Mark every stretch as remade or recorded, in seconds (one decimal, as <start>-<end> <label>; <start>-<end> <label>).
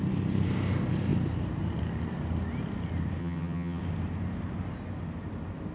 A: 0.0-3.2 recorded; 3.2-3.8 remade; 3.8-5.7 recorded